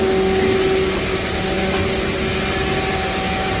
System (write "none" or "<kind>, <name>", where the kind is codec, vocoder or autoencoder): none